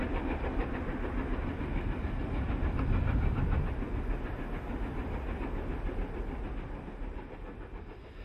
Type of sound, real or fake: real